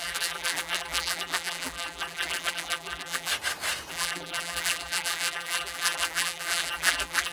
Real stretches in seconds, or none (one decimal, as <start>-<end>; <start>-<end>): 3.3-3.9